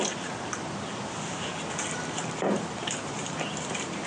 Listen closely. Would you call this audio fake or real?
real